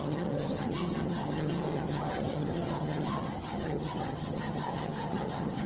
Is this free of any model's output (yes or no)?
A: no